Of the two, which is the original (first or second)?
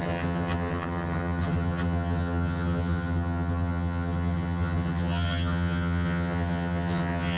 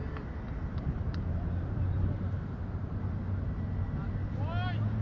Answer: second